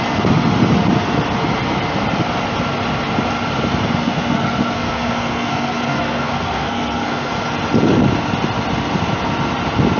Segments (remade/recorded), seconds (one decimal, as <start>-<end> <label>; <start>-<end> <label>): 0.0-4.0 recorded; 4.0-7.3 remade; 7.3-10.0 recorded